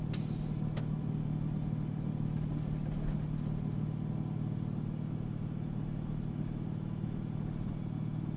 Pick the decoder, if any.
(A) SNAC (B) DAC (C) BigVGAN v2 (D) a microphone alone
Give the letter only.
D